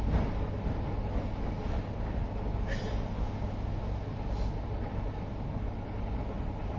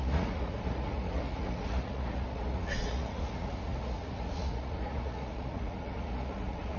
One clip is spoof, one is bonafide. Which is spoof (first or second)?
second